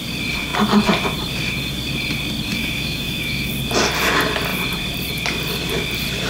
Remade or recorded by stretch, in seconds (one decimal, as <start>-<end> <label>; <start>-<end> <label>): 0.0-2.5 recorded; 2.5-3.5 remade; 3.5-6.3 recorded